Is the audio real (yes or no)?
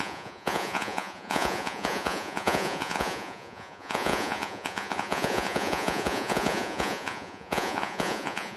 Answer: no